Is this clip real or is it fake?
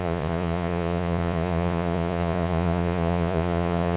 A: fake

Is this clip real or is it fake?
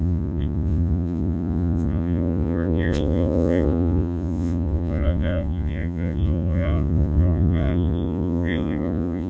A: fake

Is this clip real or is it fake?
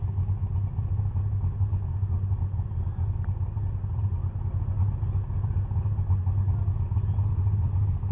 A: real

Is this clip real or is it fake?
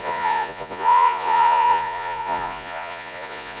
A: fake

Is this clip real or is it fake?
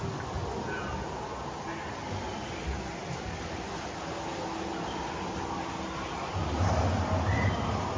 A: real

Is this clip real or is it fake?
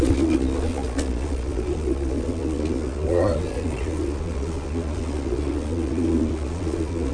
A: fake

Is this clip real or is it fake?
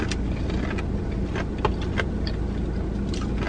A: real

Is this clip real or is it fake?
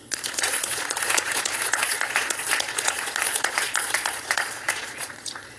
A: fake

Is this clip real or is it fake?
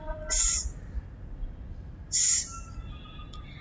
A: real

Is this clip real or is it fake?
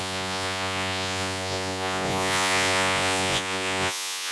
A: fake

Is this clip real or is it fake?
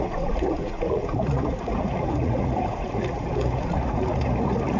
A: fake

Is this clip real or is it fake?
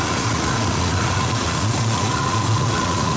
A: fake